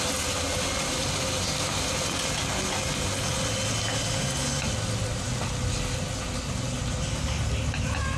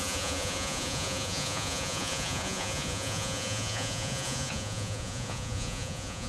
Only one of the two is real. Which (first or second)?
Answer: first